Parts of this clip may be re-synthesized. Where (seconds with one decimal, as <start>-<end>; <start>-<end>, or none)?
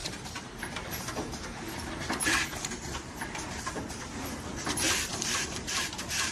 0.0-6.3